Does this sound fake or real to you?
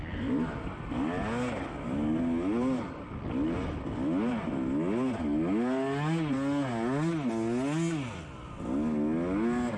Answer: real